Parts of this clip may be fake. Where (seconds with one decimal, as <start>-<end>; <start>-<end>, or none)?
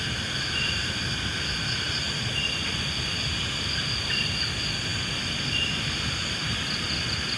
none